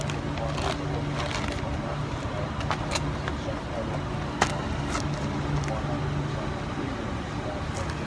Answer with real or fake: real